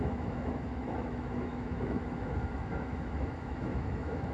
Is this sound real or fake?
fake